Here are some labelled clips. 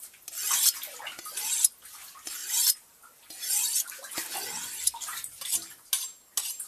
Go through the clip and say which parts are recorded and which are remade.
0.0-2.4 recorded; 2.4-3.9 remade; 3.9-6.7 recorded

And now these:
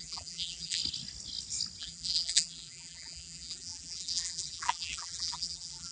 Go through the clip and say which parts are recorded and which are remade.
0.0-0.8 remade; 0.8-1.8 recorded; 1.8-5.9 remade

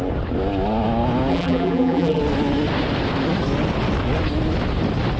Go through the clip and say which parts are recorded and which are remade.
0.0-1.3 recorded; 1.3-2.2 remade; 2.2-5.2 recorded

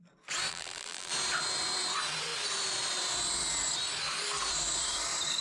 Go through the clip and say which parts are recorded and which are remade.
0.0-0.5 recorded; 0.5-1.1 remade; 1.1-5.4 recorded

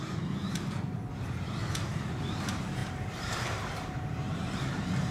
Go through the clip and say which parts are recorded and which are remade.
0.0-0.4 remade; 0.4-1.9 recorded; 1.9-5.1 remade

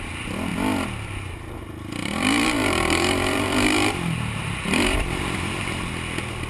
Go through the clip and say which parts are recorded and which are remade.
0.0-2.0 recorded; 2.0-5.9 remade; 5.9-6.5 recorded